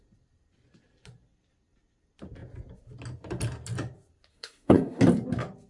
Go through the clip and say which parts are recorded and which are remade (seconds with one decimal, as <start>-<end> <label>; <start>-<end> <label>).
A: 0.0-4.3 recorded; 4.3-5.0 remade; 5.0-5.7 recorded